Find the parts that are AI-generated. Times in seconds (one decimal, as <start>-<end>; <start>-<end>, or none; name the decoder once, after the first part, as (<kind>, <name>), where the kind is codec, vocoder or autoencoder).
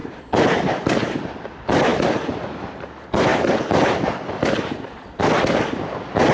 none